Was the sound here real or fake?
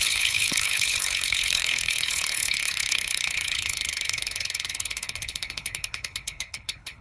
fake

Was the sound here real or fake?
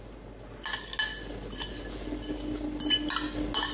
real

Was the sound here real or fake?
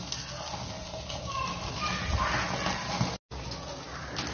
real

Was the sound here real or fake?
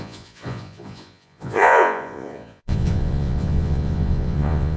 fake